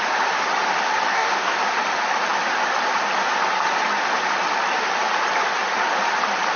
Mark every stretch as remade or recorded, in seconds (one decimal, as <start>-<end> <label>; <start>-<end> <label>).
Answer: 0.0-1.1 recorded; 1.1-1.6 remade; 1.6-6.6 recorded